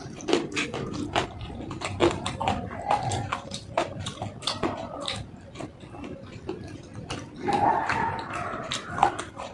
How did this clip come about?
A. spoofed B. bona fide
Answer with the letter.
A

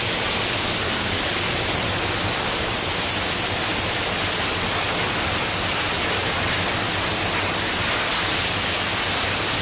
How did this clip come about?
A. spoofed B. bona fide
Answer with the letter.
B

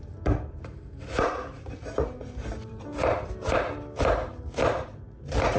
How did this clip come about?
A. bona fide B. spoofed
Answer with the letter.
B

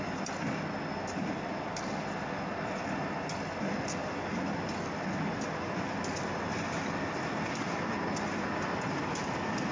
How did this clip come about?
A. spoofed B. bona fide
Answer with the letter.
B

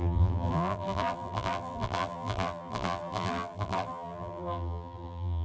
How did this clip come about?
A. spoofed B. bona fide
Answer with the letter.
A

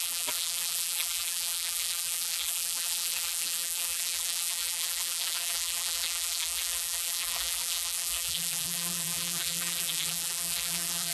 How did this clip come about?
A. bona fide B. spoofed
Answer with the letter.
B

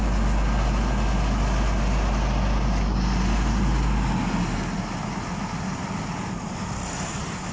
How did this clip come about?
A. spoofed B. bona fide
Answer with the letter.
B